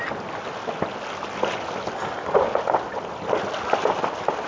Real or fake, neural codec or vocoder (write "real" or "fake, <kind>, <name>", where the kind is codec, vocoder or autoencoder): real